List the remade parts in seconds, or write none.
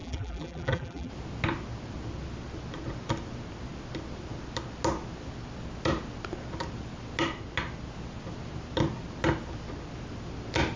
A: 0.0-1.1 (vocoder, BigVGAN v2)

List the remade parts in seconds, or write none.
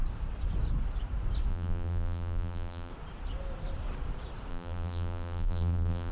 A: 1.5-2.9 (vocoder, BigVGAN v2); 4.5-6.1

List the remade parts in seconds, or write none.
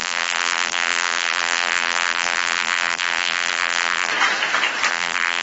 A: 0.0-4.1 (vocoder, BigVGAN v2); 4.9-5.4